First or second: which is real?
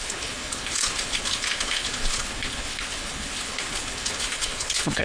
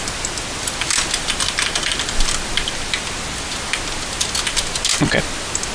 second